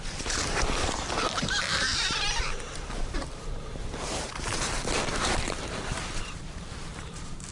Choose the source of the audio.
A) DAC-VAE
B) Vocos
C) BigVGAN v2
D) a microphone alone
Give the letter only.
C